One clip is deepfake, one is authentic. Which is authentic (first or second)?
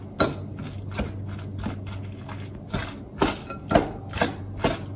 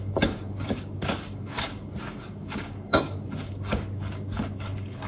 first